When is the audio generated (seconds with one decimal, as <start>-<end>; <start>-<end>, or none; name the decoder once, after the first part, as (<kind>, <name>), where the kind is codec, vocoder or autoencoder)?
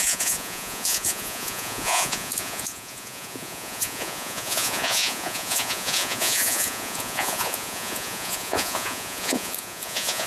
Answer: 0.0-10.3 (vocoder, Vocos)